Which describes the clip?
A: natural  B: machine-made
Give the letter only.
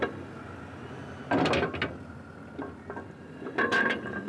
A